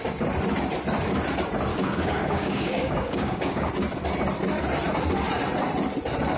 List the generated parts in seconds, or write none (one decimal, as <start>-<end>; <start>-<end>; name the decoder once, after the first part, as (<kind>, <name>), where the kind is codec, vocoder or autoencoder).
1.7-3.7 (codec, DAC)